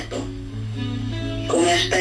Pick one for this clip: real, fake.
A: fake